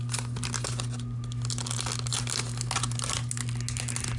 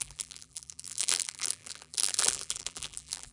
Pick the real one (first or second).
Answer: first